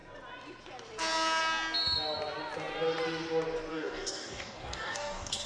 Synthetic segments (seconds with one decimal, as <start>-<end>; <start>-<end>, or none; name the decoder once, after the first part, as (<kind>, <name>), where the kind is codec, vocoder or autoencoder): 3.7-5.5 (codec, DAC)

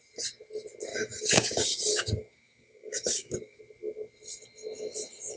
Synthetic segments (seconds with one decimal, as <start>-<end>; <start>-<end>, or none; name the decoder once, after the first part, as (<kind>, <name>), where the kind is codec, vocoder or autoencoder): 0.9-3.6 (codec, DAC)

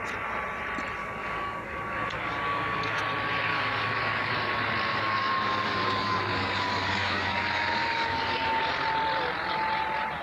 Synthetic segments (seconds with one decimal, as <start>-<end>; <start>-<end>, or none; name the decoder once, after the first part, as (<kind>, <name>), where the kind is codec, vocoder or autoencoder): 1.0-3.0 (codec, DAC); 3.5-4.3; 4.9-8.6

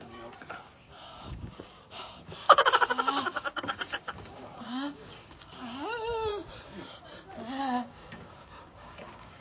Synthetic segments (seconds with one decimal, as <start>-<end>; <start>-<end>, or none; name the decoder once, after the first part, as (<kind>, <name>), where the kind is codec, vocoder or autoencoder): 0.0-6.3 (codec, DAC); 7.6-9.4

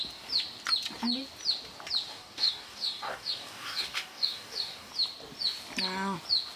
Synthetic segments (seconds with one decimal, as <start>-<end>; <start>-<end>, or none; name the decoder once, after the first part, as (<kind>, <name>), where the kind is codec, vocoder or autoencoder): 2.1-4.9 (codec, DAC)

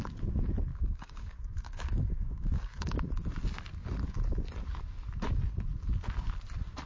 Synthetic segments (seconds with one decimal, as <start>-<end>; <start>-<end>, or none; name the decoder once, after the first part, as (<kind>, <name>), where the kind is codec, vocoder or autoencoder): 0.7-3.1 (codec, DAC)

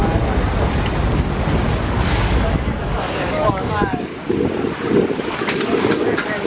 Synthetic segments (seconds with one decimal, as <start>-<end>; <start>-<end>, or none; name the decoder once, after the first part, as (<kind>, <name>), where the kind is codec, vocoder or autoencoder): 1.7-4.1 (codec, DAC); 5.2-6.5